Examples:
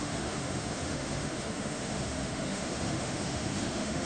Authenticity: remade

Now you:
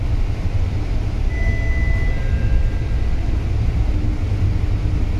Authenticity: recorded